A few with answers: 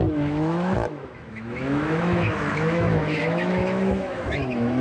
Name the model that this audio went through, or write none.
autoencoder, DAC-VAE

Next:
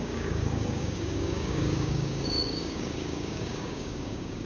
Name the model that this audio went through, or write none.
codec, DAC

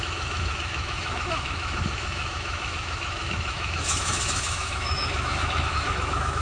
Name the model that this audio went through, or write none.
autoencoder, DAC-VAE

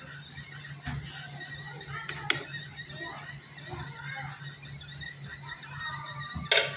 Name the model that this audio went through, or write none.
none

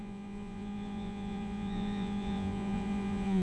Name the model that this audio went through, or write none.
vocoder, Vocos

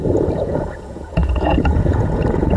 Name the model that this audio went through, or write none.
vocoder, Vocos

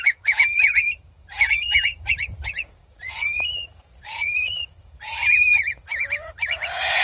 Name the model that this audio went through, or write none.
vocoder, Vocos